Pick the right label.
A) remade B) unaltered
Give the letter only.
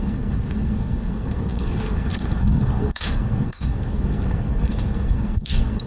A